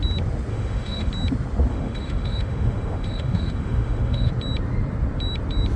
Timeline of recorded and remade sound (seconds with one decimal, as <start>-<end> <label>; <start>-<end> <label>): 0.0-0.5 recorded; 0.5-1.1 remade; 1.1-1.7 recorded; 1.7-4.3 remade; 4.3-5.8 recorded